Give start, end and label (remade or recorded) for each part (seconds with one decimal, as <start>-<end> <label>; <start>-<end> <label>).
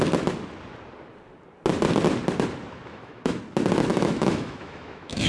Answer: 0.0-2.9 recorded; 2.9-3.4 remade; 3.4-3.9 recorded; 3.9-5.3 remade